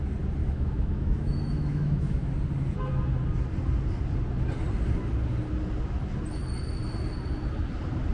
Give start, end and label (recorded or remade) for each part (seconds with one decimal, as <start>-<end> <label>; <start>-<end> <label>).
0.0-0.4 recorded; 0.4-2.3 remade; 2.3-8.1 recorded